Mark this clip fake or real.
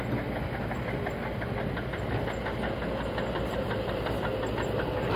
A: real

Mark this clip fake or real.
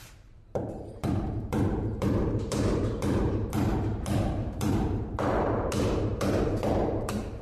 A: fake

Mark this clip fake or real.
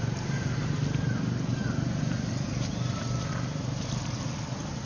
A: real